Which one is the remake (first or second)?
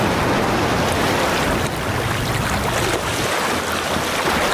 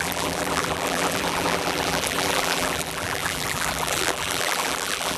second